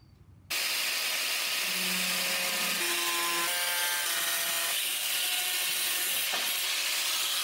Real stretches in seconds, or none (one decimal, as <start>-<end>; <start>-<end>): 0.0-4.6; 5.1-7.4